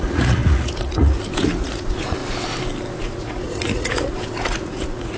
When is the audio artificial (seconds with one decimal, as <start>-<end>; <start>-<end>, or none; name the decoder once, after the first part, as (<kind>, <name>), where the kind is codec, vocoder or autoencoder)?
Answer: 0.0-2.2 (vocoder, Vocos); 3.0-5.2